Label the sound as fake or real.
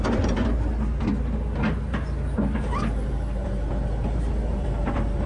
real